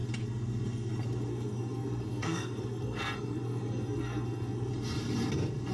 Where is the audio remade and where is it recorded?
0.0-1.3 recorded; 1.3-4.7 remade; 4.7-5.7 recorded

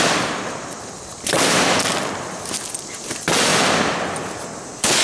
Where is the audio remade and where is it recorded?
0.0-5.0 recorded

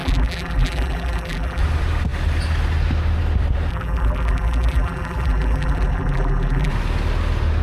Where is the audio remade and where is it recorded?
0.0-1.6 remade; 1.6-3.7 recorded; 3.7-6.7 remade; 6.7-7.6 recorded

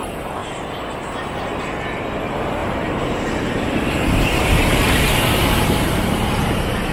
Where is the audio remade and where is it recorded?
0.0-2.6 recorded; 2.6-6.5 remade; 6.5-6.9 recorded